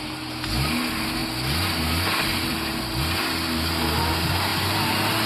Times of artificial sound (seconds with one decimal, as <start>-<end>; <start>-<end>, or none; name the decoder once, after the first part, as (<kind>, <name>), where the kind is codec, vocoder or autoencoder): none